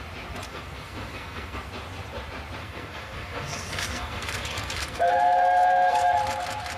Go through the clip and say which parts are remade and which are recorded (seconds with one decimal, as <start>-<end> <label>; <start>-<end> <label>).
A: 0.0-0.5 recorded; 0.5-1.7 remade; 1.7-2.6 recorded; 2.6-6.1 remade; 6.1-6.8 recorded